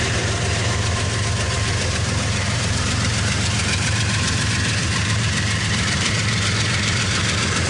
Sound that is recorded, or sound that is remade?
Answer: remade